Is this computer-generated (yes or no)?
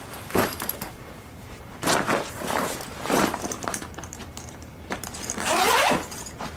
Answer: yes